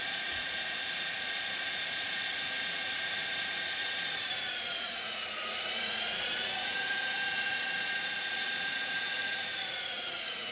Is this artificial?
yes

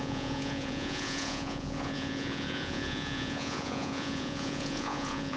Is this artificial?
yes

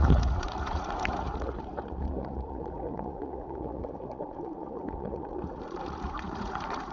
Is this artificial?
yes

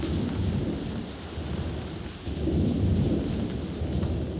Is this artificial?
no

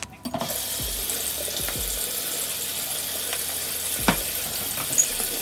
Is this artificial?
no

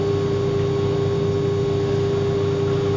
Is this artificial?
no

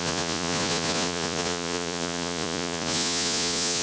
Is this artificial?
yes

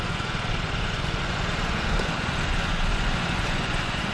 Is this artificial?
yes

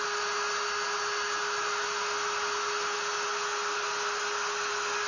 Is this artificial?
no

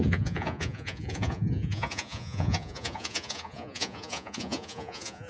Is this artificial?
yes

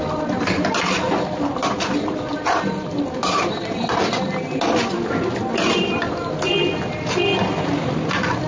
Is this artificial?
no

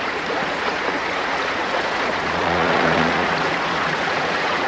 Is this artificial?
yes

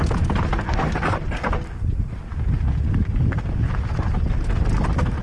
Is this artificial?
no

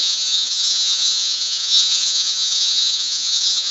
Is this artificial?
yes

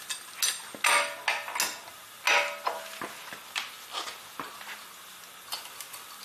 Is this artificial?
no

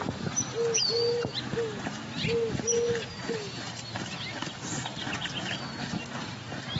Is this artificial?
no